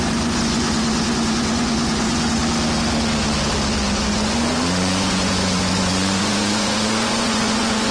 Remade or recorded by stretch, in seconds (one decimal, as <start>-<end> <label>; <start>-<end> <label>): 0.0-2.4 remade; 2.4-4.0 recorded; 4.0-7.9 remade